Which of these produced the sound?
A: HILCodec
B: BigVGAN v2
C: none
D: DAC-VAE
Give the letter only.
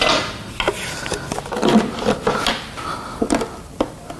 C